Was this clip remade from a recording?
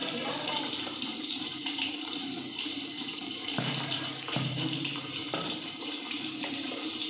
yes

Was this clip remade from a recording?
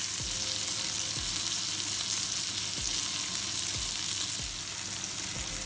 no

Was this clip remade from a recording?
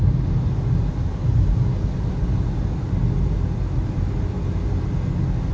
no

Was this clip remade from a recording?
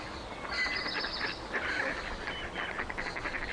no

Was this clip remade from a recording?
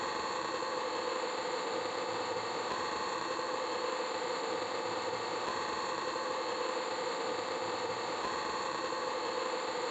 yes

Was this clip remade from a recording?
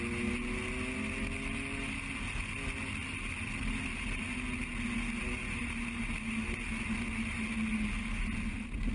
no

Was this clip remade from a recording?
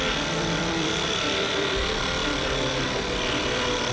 yes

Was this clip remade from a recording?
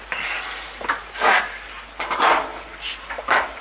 yes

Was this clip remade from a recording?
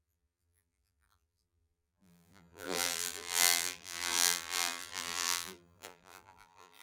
yes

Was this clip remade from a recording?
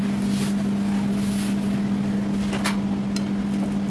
no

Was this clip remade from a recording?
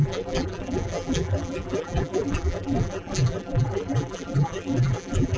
yes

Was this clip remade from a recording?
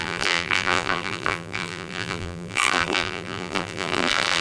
yes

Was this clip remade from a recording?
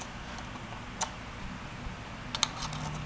no